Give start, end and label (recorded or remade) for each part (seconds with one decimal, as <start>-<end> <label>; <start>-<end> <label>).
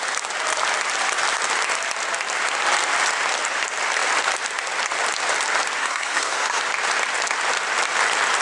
0.0-5.8 recorded; 5.8-6.6 remade; 6.6-8.4 recorded